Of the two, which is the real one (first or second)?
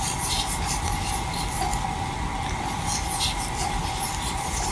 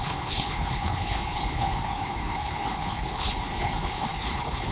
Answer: first